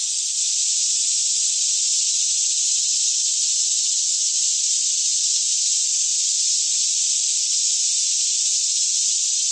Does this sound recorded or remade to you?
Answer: recorded